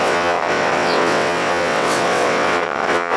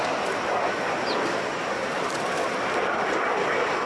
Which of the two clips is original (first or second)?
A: second